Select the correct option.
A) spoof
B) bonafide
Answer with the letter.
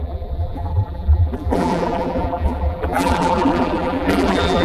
A